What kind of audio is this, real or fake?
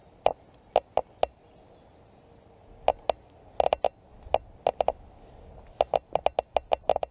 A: real